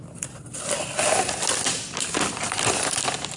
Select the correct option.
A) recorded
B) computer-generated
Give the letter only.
A